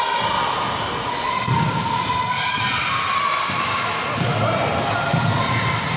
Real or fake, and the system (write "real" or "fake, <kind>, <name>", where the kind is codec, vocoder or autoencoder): real